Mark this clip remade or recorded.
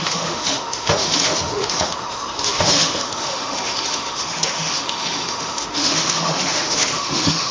remade